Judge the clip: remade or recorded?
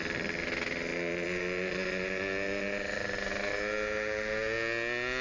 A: recorded